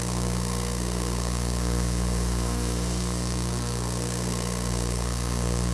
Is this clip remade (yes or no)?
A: yes